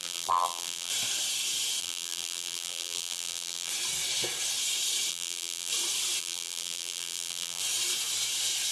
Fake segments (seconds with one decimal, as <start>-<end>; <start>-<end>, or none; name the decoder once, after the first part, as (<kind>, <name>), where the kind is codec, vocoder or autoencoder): 0.0-0.9 (vocoder, BigVGAN v2); 1.8-3.7; 5.1-5.7; 6.2-7.6